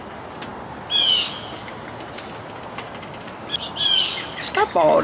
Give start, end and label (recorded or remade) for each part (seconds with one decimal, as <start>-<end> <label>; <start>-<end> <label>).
0.0-5.0 recorded